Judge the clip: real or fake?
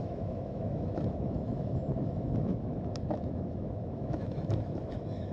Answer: fake